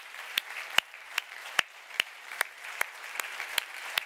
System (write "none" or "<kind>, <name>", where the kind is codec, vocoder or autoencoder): vocoder, BigVGAN v2